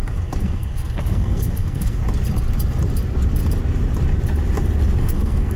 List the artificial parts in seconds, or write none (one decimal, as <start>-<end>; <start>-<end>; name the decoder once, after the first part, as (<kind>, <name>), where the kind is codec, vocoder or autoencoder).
0.0-2.0 (codec, SNAC); 5.0-5.6